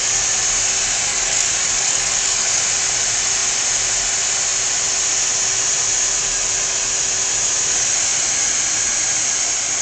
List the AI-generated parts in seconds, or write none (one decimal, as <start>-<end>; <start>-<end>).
1.1-2.6